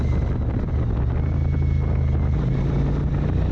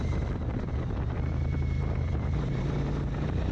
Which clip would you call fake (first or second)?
second